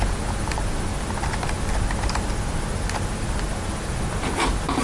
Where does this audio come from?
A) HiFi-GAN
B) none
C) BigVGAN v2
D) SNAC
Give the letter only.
B